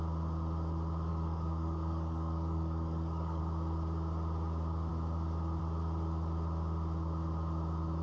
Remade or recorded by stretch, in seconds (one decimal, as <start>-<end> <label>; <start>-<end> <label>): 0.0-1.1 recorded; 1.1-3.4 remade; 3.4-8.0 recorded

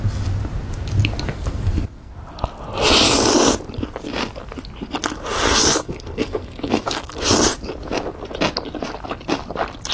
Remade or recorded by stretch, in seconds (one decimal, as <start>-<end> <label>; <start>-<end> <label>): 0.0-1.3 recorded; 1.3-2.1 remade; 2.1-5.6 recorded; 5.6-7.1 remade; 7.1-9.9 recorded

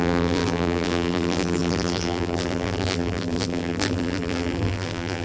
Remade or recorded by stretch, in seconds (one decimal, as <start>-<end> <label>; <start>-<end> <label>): 0.0-5.2 remade

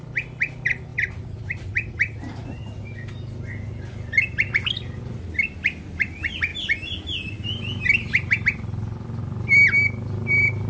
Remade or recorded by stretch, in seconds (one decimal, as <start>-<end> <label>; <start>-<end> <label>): 0.0-10.7 recorded

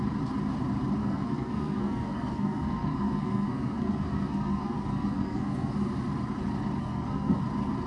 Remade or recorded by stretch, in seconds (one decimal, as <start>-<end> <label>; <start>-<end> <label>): 0.0-1.0 recorded; 1.0-5.7 remade; 5.7-6.8 recorded; 6.8-7.4 remade; 7.4-7.9 recorded

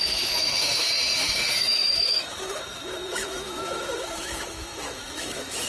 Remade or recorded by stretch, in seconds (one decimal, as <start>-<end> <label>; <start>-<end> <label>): 0.0-5.7 remade

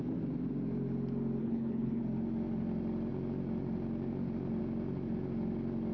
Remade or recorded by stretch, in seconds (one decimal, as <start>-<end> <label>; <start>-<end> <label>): 0.0-1.4 recorded; 1.4-2.0 remade; 2.0-5.9 recorded

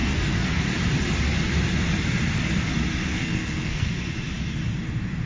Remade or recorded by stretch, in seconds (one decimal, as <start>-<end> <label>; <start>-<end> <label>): 0.0-0.6 remade; 0.6-3.1 recorded; 3.1-3.9 remade; 3.9-5.3 recorded